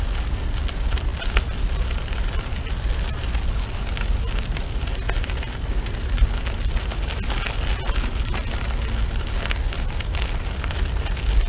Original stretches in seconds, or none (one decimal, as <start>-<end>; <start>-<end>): 0.0-11.5